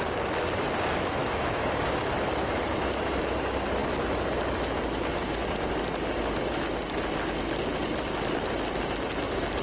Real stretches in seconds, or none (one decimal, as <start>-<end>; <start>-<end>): 0.0-1.2; 1.9-9.6